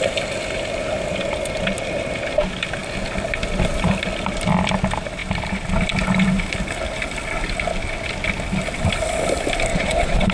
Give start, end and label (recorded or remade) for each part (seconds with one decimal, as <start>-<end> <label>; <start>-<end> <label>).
0.0-9.7 recorded; 9.7-10.3 remade